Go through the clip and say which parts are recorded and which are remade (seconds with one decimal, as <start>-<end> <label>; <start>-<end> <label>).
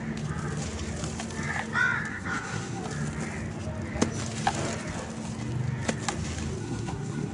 0.0-2.1 recorded; 2.1-2.8 remade; 2.8-6.6 recorded; 6.6-7.3 remade